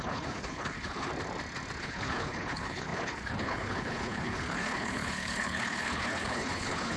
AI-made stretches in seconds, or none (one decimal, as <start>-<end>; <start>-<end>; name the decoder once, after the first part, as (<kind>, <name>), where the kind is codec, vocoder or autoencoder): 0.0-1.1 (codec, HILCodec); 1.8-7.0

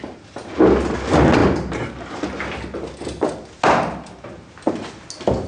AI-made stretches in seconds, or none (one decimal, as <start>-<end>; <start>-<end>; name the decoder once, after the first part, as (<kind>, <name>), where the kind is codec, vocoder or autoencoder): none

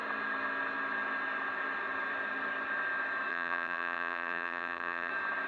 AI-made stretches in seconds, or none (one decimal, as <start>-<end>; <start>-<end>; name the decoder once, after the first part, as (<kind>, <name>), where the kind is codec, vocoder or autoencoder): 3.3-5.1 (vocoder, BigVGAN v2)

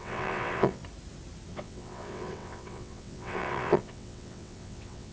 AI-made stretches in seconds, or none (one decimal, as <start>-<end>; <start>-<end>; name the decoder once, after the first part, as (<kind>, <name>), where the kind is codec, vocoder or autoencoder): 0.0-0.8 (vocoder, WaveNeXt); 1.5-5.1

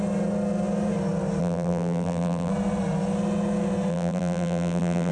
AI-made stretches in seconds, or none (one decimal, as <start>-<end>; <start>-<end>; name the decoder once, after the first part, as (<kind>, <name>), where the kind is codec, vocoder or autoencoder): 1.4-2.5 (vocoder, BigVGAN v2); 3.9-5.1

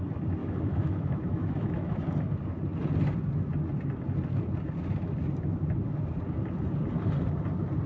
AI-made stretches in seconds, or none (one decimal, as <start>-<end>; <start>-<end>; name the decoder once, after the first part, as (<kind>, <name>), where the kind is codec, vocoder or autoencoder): 0.4-2.2 (autoencoder, DAC-VAE)

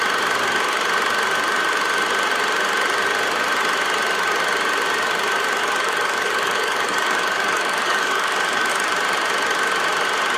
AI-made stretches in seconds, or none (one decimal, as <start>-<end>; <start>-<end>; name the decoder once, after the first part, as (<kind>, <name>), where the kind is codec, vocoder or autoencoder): 5.6-8.7 (codec, DAC)

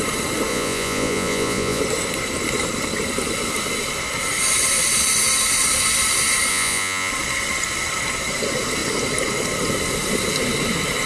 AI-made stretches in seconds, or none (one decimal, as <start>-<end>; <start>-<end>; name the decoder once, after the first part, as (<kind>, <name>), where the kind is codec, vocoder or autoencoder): 0.5-1.8 (vocoder, Vocos); 6.5-7.1